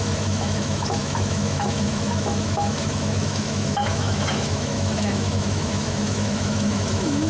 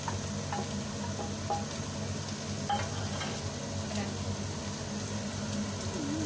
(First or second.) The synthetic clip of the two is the first